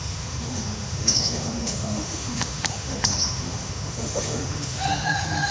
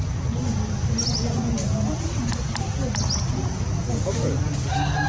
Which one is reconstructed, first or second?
first